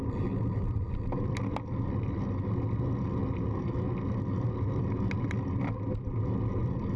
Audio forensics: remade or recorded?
recorded